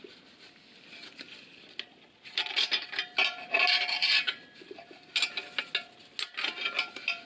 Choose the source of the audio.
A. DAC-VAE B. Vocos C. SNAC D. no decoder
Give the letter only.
D